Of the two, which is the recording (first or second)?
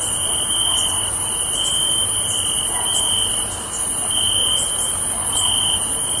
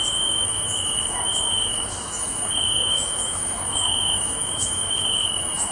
first